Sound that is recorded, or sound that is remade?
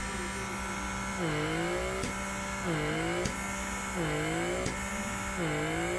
recorded